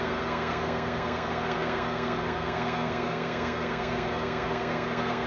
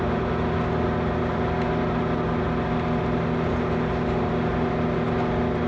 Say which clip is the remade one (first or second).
first